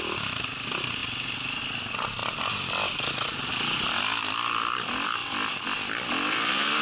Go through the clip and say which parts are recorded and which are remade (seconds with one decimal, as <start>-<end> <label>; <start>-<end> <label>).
0.0-6.8 recorded